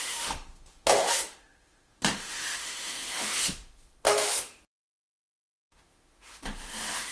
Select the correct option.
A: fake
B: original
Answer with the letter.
A